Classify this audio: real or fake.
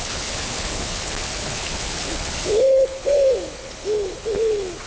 fake